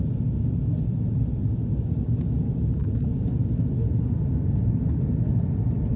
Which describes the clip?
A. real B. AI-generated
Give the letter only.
A